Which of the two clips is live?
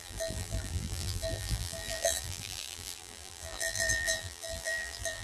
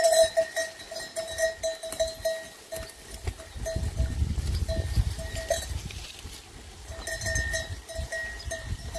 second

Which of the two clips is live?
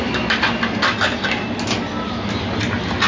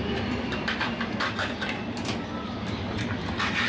first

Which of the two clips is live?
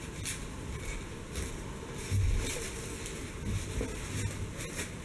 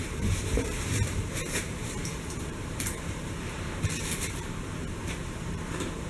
first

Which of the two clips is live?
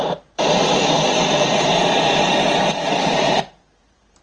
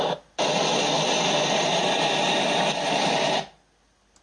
second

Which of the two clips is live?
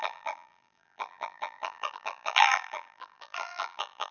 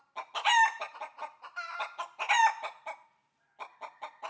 second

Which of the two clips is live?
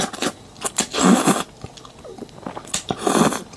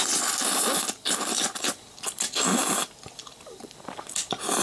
first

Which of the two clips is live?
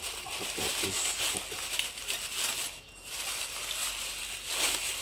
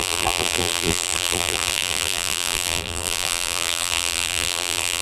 first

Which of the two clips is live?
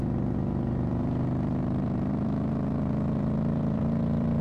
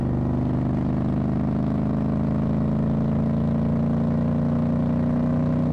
second